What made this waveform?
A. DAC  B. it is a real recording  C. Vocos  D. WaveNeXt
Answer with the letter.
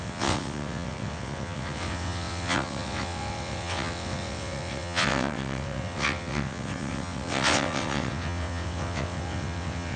D